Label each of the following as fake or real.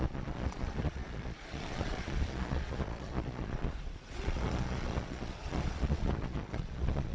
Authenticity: fake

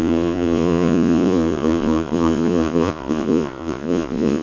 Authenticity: fake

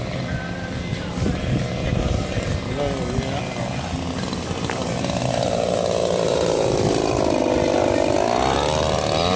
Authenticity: real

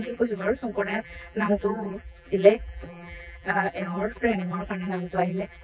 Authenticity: fake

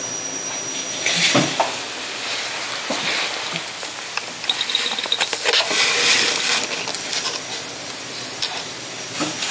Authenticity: real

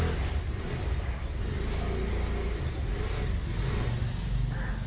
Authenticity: real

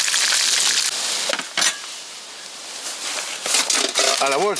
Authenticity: real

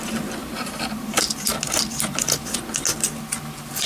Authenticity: real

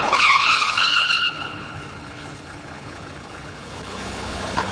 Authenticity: fake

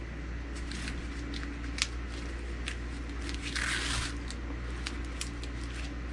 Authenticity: real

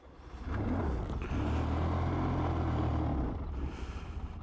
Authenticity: real